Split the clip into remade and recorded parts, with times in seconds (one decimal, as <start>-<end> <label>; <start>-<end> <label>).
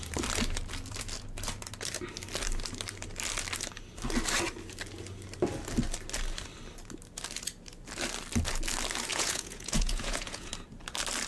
0.0-9.1 recorded; 9.1-10.5 remade; 10.5-11.3 recorded